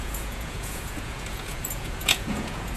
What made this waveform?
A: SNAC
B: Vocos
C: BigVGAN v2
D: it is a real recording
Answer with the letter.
B